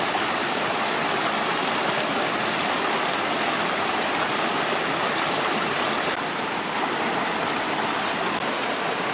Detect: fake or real real